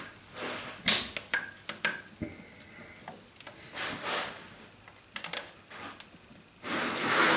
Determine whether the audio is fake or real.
real